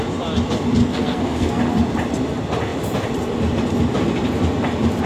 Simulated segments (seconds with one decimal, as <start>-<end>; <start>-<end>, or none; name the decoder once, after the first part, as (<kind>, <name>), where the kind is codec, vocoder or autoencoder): 0.8-1.6 (codec, SNAC)